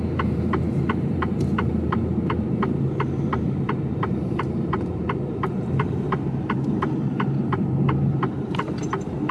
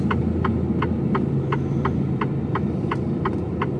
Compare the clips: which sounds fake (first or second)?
first